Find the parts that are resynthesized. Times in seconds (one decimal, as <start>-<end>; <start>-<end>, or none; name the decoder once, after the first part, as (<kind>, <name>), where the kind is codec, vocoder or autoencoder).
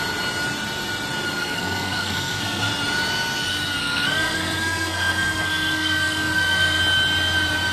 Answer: 1.4-2.7 (codec, SNAC); 3.8-6.8